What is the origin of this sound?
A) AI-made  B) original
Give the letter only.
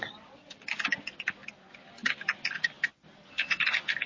B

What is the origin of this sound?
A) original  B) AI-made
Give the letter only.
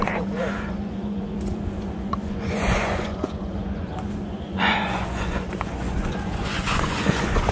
B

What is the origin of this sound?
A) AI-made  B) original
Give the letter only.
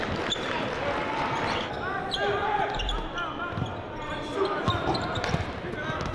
B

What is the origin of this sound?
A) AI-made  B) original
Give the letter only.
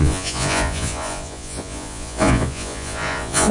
A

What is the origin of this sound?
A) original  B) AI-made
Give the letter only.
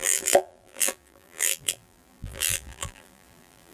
B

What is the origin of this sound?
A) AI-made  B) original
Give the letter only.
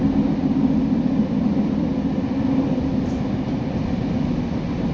B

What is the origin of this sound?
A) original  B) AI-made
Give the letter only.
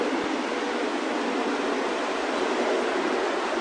A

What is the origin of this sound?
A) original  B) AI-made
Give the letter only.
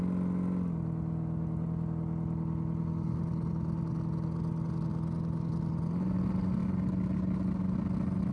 A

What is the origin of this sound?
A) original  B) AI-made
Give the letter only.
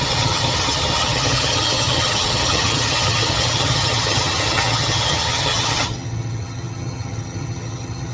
B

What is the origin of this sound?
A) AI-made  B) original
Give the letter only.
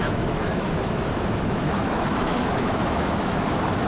A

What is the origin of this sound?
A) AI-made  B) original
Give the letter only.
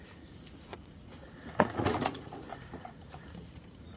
A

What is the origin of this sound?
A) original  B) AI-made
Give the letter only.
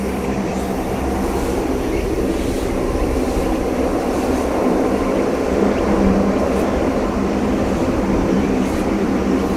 B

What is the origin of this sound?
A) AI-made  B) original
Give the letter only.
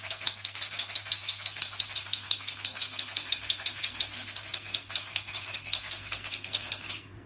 A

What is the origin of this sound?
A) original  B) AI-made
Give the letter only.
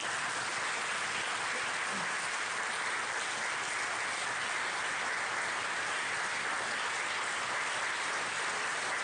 A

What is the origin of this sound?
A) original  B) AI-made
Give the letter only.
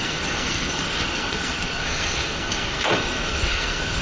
B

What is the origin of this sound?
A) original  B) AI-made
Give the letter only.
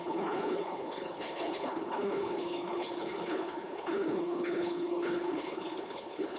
B